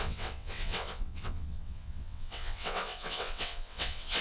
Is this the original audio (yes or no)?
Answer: no